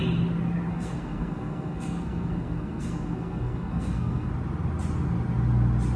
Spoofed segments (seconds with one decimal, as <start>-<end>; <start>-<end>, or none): 0.7-4.3